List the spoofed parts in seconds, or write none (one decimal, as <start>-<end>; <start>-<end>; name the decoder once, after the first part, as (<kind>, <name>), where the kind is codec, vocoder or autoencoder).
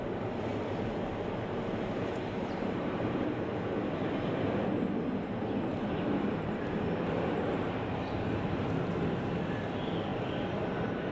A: 0.5-3.1 (vocoder, BigVGAN v2); 5.7-8.7